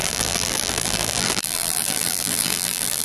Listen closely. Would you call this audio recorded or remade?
remade